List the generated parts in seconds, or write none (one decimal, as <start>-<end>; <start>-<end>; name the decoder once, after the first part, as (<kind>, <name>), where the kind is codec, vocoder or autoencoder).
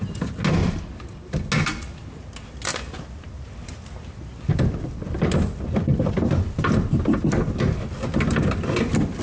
0.6-1.5 (vocoder, BigVGAN v2); 2.7-7.3